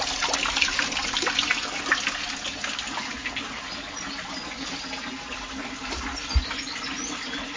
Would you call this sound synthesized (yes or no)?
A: no